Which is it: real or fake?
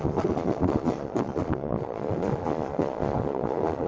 fake